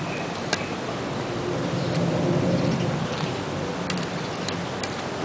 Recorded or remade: recorded